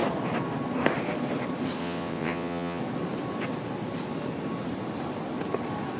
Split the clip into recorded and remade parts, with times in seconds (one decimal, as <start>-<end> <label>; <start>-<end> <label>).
0.0-1.8 recorded; 1.8-2.8 remade; 2.8-6.0 recorded